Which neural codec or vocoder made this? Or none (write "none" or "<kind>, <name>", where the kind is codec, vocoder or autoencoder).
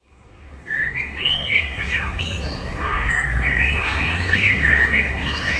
codec, SNAC